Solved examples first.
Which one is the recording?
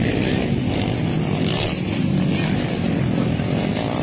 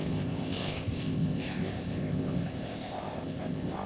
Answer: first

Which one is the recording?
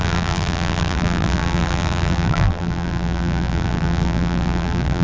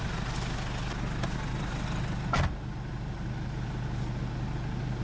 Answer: second